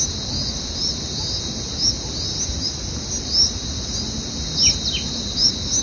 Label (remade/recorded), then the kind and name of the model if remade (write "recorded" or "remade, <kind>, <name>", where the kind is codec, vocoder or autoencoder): recorded